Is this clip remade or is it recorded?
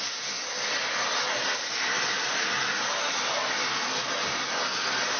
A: recorded